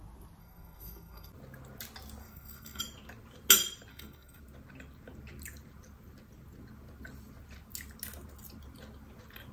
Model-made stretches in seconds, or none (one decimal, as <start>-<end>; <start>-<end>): 0.4-1.3; 2.2-2.8; 3.9-4.4